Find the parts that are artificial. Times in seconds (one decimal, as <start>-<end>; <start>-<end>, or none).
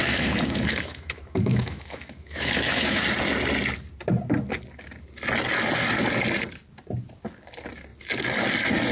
0.0-3.0